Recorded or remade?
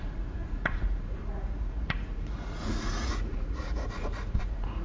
remade